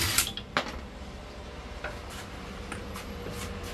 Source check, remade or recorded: recorded